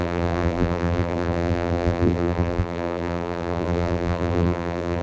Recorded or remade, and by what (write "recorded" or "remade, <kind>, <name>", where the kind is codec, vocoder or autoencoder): remade, vocoder, BigVGAN v2